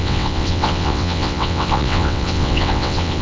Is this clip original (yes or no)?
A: no